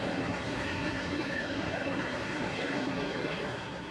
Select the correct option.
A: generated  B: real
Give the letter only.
A